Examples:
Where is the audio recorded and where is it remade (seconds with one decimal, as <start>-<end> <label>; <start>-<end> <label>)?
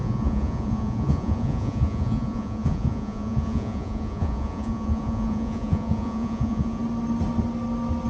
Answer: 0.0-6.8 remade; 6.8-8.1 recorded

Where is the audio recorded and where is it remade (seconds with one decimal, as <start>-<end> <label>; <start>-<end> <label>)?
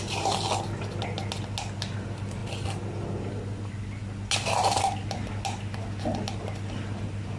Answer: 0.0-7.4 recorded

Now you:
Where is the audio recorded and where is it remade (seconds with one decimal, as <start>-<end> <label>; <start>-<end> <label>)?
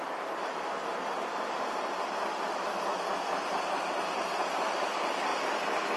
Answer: 0.0-0.8 remade; 0.8-4.4 recorded; 4.4-5.3 remade; 5.3-6.0 recorded